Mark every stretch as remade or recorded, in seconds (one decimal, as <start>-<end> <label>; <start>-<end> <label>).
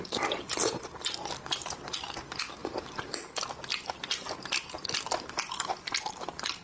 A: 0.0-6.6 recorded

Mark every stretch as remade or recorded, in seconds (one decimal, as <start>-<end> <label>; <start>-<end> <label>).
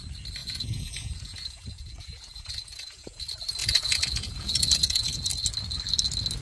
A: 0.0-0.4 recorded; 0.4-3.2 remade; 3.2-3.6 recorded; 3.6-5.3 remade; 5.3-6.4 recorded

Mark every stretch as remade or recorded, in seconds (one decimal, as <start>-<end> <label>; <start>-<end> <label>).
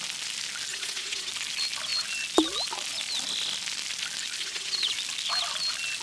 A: 0.0-0.7 recorded; 0.7-1.3 remade; 1.3-4.4 recorded; 4.4-4.9 remade; 4.9-6.0 recorded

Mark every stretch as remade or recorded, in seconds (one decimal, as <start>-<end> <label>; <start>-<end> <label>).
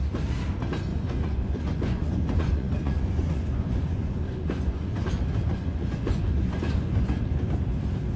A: 0.0-0.9 recorded; 0.9-5.1 remade; 5.1-5.5 recorded; 5.5-7.2 remade; 7.2-8.2 recorded